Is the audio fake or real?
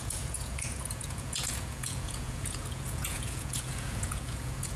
fake